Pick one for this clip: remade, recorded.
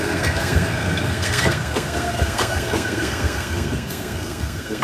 remade